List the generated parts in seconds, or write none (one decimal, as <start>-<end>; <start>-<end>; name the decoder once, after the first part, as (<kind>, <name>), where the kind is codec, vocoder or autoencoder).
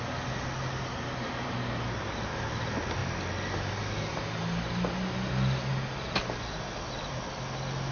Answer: none